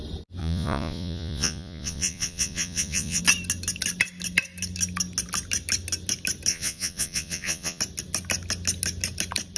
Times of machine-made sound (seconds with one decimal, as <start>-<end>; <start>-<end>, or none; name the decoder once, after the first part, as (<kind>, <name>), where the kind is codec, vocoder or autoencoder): 0.4-3.2 (vocoder, Vocos); 6.5-7.8